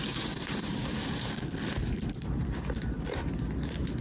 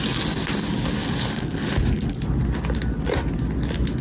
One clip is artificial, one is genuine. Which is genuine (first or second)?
second